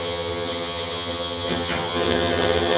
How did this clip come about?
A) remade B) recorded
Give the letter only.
A